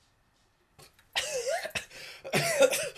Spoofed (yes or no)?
yes